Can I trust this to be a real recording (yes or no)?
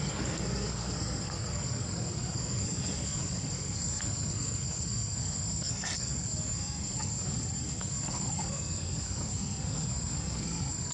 no